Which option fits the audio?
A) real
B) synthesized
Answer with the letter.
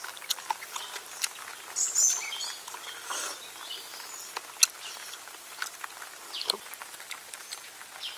A